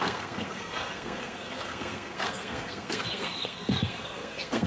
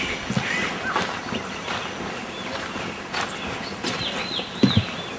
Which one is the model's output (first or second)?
first